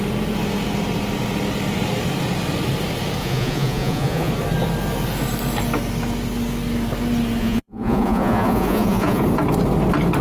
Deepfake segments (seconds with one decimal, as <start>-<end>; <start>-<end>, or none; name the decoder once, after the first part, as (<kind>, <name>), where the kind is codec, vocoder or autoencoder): 3.2-4.3 (vocoder, Vocos); 7.4-9.2